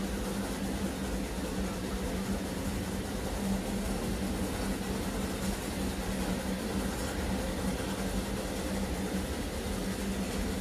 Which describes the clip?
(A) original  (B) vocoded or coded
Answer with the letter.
A